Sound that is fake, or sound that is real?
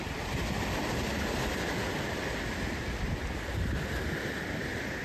real